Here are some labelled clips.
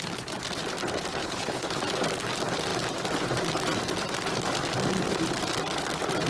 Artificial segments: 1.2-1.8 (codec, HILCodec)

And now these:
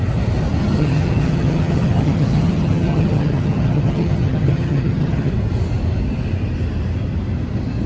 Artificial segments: 0.6-5.3 (vocoder, HiFi-GAN)

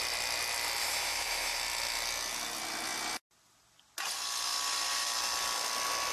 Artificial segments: 0.8-1.6 (autoencoder, DAC-VAE)

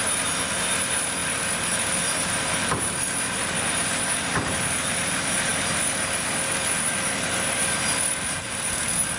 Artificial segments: none

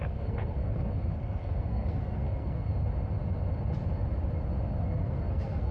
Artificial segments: 0.0-2.7 (codec, SNAC); 4.7-5.7